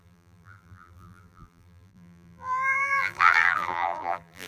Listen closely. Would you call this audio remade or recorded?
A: remade